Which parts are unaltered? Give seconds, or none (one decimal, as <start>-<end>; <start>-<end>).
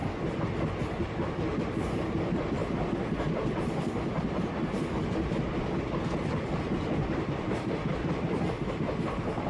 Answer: 2.6-3.3